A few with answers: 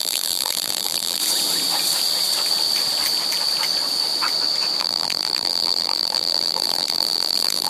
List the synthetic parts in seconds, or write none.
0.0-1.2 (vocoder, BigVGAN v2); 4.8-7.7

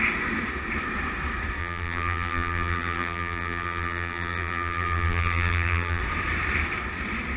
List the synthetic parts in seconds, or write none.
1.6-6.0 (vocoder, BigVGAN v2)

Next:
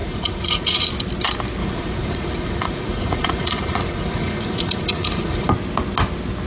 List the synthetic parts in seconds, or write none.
0.0-0.9 (vocoder, Vocos); 1.6-5.5

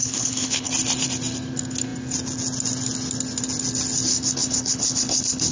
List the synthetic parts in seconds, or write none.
0.0-0.7 (codec, HILCodec); 4.1-5.5

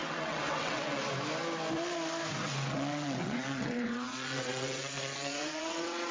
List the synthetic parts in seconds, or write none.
0.0-1.1 (vocoder, WaveNeXt); 2.4-6.1